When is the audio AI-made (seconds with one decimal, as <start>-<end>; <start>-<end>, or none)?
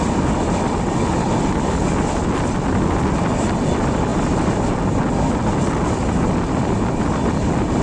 none